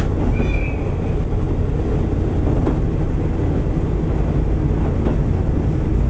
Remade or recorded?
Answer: recorded